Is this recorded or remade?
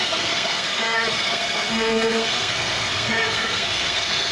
remade